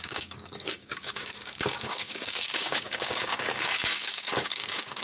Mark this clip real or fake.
fake